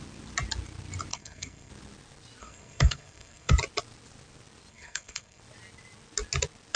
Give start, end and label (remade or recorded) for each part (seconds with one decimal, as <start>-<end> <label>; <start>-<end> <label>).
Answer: 0.0-1.1 recorded; 1.1-1.7 remade; 1.7-2.4 recorded; 2.4-3.5 remade; 3.5-4.7 recorded; 4.7-5.4 remade; 5.4-6.8 recorded